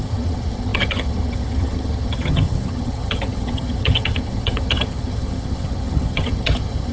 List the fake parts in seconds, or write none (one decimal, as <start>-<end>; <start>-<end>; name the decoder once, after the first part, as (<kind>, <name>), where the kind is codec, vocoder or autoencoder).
0.0-6.9 (vocoder, HiFi-GAN)